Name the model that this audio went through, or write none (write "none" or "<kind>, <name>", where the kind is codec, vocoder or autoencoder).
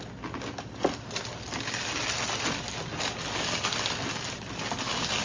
none